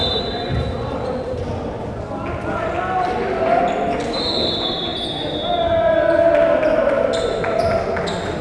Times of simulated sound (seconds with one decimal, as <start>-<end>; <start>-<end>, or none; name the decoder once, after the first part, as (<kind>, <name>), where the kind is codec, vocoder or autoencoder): none